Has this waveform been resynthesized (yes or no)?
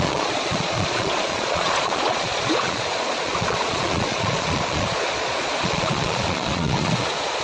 yes